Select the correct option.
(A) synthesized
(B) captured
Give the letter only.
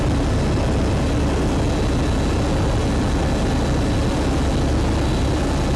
B